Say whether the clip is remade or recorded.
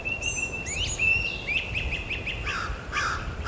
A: recorded